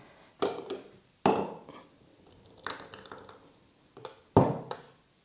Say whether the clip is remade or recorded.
recorded